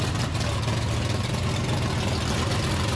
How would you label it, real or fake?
real